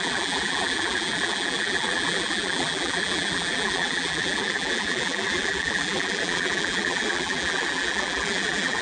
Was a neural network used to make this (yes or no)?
yes